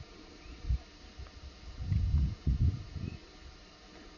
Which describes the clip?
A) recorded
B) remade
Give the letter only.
A